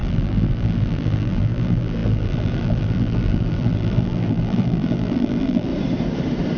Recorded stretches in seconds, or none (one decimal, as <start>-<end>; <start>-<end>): 5.7-6.6